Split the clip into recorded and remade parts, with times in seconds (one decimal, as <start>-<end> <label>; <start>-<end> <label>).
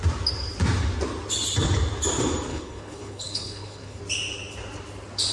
0.0-2.5 recorded; 2.5-4.0 remade; 4.0-5.3 recorded